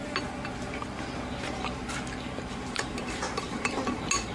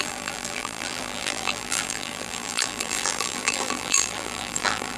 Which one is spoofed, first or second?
second